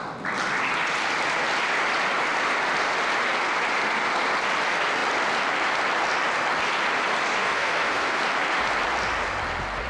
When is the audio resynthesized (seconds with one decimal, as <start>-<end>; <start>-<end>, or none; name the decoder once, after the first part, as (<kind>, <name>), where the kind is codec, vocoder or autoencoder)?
7.4-8.2 (codec, SNAC)